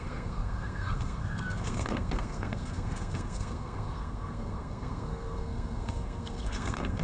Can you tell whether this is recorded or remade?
remade